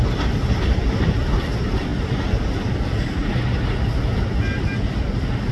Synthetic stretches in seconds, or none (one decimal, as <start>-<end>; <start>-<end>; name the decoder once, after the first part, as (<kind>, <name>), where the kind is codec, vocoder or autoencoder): none